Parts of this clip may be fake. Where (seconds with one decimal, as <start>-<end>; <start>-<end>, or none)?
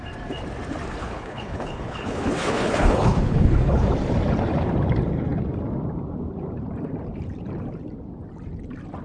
1.0-3.9